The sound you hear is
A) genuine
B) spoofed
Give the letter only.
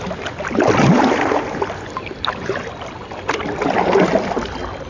A